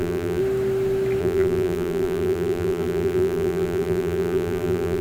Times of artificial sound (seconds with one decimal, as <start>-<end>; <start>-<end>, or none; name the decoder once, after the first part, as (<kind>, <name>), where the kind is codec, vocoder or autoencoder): 0.0-0.4 (vocoder, BigVGAN v2); 1.2-5.0

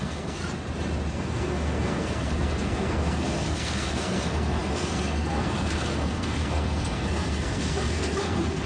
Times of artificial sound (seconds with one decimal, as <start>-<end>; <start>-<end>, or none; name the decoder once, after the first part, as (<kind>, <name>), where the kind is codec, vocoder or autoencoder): 0.0-0.4 (codec, SNAC); 1.1-8.7

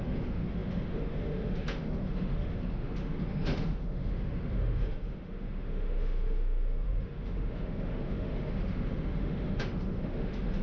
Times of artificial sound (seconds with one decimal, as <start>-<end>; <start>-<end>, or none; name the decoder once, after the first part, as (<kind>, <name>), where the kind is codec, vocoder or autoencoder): 0.0-10.6 (autoencoder, DAC-VAE)

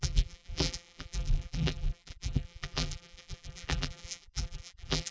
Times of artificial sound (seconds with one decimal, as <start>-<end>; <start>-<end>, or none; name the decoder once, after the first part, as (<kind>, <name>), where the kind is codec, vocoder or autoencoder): 0.0-5.1 (vocoder, BigVGAN v2)

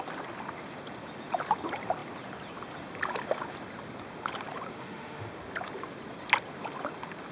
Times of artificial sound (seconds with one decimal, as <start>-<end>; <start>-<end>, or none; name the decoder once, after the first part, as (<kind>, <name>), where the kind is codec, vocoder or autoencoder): 4.7-5.3 (autoencoder, DAC-VAE)